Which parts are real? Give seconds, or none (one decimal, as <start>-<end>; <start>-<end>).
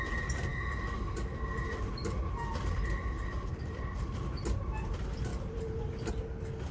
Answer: 0.0-3.3; 4.1-5.3; 6.1-6.7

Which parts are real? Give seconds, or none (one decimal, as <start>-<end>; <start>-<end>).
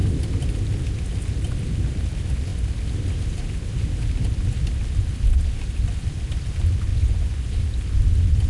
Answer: 0.0-6.9; 7.5-8.5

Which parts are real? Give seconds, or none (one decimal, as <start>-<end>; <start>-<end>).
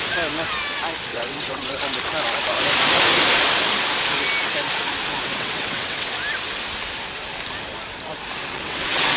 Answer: 0.0-1.1; 1.8-5.3; 6.1-8.4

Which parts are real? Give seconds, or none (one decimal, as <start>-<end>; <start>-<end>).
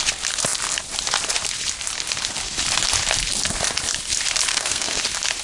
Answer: 0.0-4.5; 5.0-5.4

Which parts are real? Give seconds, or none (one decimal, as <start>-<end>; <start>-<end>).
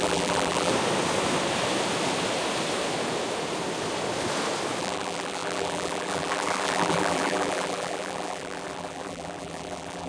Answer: 0.7-4.8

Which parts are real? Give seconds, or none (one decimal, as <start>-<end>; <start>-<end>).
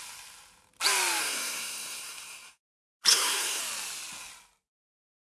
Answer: 0.0-1.2; 2.6-3.1; 3.6-5.4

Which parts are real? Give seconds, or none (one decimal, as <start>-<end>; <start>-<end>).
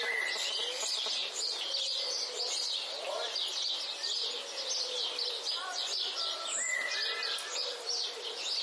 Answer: 0.0-5.6; 6.2-8.6